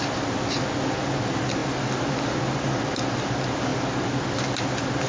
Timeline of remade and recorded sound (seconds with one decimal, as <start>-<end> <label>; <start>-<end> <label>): 0.0-5.1 recorded